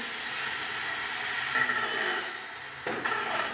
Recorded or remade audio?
recorded